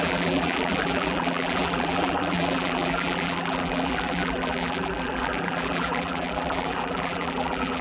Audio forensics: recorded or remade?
remade